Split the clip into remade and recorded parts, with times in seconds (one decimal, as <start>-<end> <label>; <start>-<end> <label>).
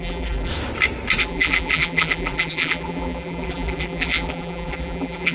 0.0-0.5 remade; 0.5-1.2 recorded; 1.2-5.3 remade